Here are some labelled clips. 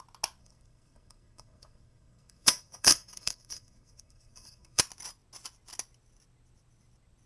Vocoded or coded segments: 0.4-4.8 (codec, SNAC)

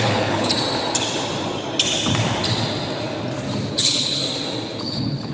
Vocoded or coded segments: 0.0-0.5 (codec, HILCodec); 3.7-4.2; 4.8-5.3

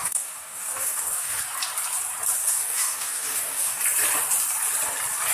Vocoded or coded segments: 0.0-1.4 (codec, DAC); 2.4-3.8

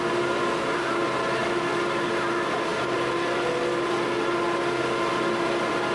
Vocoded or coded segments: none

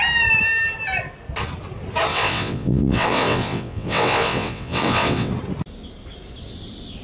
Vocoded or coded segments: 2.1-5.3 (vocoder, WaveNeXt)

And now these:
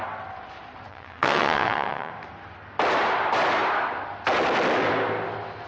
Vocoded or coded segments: 0.9-2.1 (vocoder, WaveNeXt)

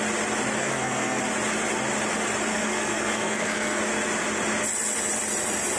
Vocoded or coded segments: 0.6-1.2 (codec, SNAC); 2.5-3.8

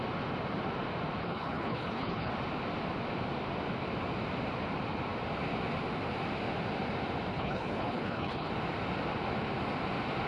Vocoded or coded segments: 1.2-2.3 (codec, HILCodec); 7.3-8.5